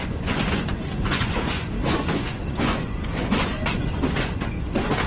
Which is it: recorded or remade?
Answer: remade